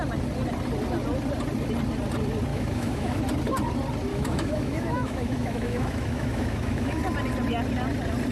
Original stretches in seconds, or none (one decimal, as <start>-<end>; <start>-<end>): 0.0-2.5; 3.2-4.1; 7.0-8.3